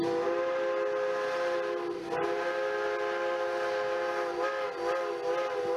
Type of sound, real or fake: real